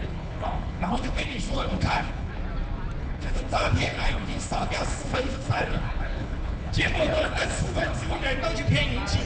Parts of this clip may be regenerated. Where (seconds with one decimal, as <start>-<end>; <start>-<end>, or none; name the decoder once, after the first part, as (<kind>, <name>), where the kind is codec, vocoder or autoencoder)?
0.0-2.3 (codec, HILCodec); 3.0-8.2